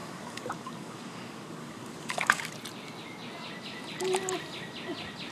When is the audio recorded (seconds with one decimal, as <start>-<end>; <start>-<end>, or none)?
2.5-5.3